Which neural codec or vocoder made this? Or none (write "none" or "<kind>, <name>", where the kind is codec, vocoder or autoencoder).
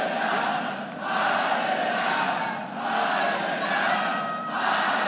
none